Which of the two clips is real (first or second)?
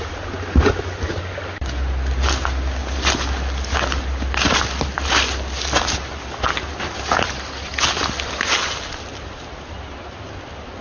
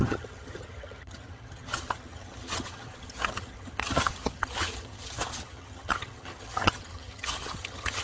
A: first